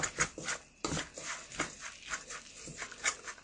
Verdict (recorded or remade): recorded